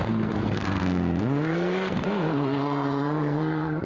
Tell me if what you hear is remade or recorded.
remade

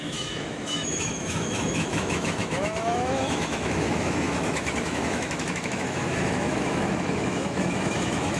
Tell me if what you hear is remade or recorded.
remade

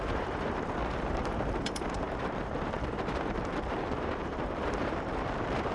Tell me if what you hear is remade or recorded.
remade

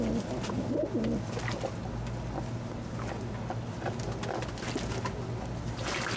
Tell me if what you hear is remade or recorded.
recorded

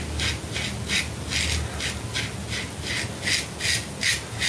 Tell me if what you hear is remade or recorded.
recorded